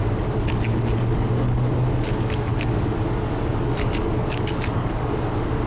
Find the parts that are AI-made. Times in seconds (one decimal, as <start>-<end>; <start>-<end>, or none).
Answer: 0.0-5.7